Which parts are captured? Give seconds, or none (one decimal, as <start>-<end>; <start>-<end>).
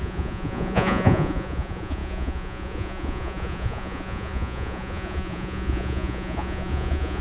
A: none